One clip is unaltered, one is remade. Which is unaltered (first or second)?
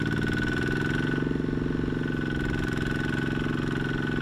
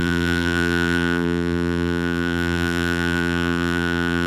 first